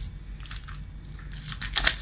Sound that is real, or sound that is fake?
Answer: real